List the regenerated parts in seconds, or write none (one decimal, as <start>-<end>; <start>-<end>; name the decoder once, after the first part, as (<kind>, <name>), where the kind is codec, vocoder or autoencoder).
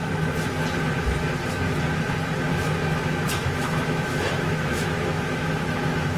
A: 2.5-6.2 (autoencoder, DAC-VAE)